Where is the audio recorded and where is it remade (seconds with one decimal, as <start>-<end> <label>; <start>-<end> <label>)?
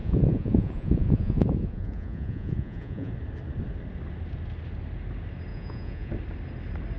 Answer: 0.0-3.1 remade; 3.1-5.5 recorded; 5.5-6.1 remade; 6.1-7.0 recorded